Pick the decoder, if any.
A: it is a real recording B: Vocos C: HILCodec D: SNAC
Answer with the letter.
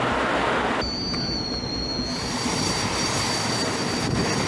A